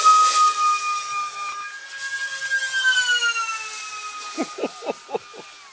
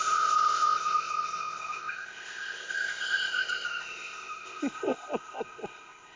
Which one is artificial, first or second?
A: second